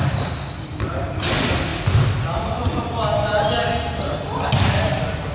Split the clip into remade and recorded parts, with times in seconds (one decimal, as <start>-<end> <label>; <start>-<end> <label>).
0.0-5.3 recorded